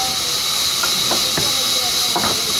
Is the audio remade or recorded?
recorded